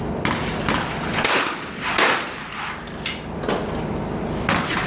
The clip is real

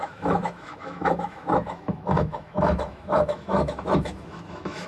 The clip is fake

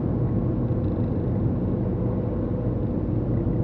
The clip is real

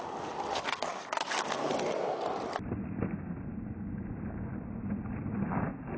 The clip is real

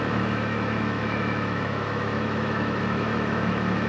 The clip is fake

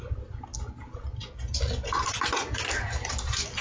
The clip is real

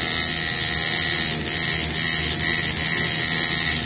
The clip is real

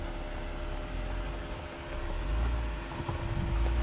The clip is real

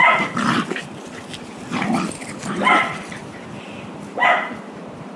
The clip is real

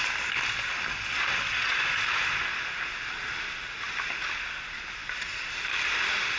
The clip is real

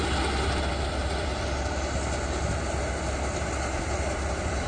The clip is real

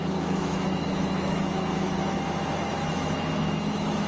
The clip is fake